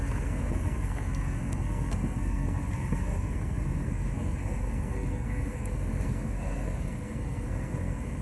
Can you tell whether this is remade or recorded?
remade